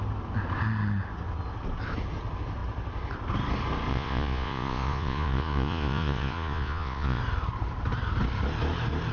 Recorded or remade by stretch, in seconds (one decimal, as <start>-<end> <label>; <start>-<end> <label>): 0.0-3.9 recorded; 3.9-7.2 remade; 7.2-9.1 recorded